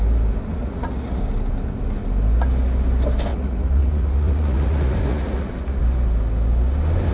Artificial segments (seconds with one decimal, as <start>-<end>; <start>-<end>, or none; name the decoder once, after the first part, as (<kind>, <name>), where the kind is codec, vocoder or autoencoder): 0.5-1.2 (vocoder, Vocos); 3.3-5.8